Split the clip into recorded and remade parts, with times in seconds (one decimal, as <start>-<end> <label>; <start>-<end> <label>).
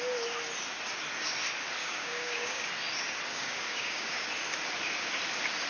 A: 0.0-1.8 recorded; 1.8-2.7 remade; 2.7-3.3 recorded; 3.3-4.3 remade; 4.3-5.7 recorded